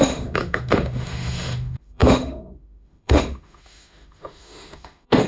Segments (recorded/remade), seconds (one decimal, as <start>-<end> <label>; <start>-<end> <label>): 0.0-5.3 remade